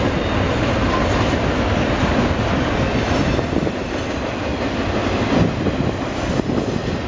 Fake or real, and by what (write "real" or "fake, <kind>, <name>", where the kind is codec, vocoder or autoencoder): real